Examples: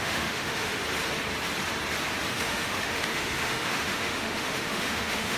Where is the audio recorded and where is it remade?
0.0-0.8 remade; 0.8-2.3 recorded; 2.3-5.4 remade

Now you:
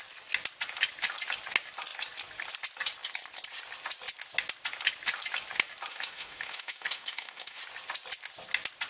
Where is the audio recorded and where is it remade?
0.0-5.9 recorded; 5.9-7.6 remade; 7.6-8.9 recorded

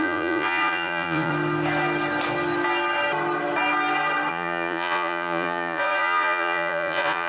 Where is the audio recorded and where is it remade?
0.0-1.3 remade; 1.3-4.3 recorded; 4.3-7.3 remade

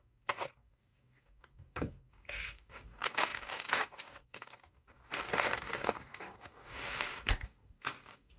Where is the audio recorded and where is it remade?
0.0-8.4 remade

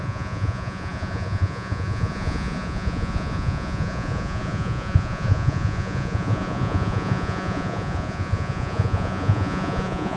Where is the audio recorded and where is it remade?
0.0-10.2 remade

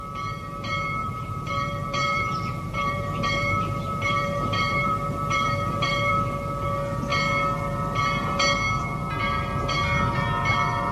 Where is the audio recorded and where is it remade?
0.0-1.0 recorded; 1.0-6.1 remade; 6.1-10.9 recorded

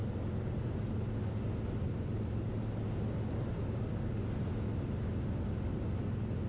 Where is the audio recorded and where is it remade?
0.0-6.5 recorded

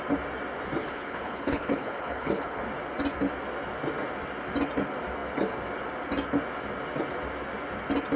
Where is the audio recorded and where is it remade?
0.0-0.8 recorded; 0.8-2.6 remade; 2.6-8.2 recorded